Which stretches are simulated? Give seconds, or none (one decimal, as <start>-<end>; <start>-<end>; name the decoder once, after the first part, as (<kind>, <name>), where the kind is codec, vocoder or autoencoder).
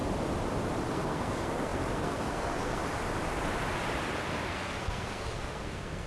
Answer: 0.9-2.8 (codec, SNAC); 4.3-6.1